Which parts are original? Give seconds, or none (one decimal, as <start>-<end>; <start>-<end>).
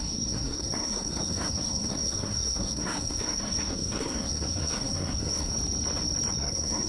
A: 5.5-6.3